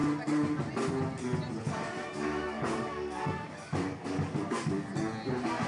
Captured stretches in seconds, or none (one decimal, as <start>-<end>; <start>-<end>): 0.0-2.1; 4.9-5.7